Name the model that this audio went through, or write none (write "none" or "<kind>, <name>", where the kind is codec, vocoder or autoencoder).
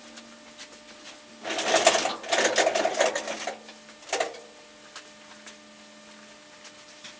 none